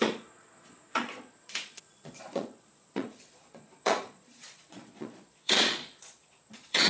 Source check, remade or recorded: remade